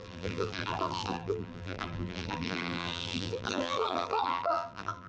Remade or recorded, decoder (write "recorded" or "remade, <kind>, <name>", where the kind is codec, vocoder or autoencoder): remade, vocoder, BigVGAN v2